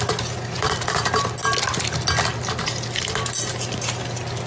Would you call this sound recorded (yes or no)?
yes